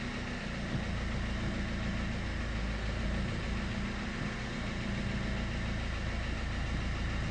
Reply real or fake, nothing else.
real